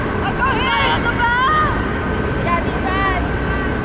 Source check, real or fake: real